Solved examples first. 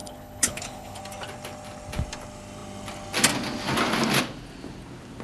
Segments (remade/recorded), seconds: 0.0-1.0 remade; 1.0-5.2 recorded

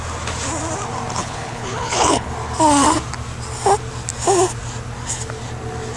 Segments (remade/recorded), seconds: 0.0-1.2 recorded; 1.2-2.3 remade; 2.3-6.0 recorded